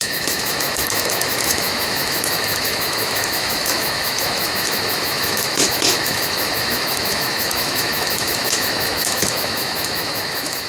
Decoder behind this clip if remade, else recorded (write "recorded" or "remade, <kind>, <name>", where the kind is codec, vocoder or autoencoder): remade, autoencoder, DAC-VAE